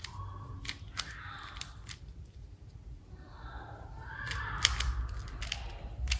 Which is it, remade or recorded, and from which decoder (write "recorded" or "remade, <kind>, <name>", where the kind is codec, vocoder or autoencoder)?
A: recorded